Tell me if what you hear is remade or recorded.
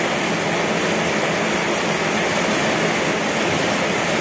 recorded